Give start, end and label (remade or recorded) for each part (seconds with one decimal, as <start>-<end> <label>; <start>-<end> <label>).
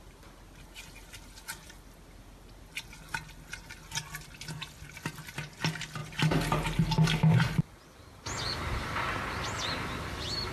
0.0-10.5 recorded